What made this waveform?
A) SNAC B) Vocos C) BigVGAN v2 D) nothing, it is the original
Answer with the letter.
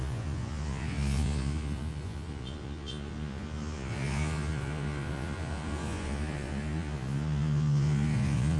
B